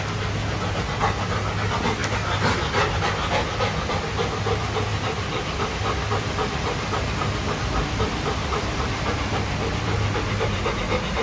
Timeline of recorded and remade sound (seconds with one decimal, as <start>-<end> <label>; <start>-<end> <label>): 0.0-4.9 recorded; 4.9-5.7 remade; 5.7-7.2 recorded; 7.2-10.6 remade; 10.6-11.2 recorded